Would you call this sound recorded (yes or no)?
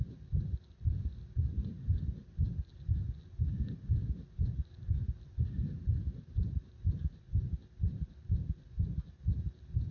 yes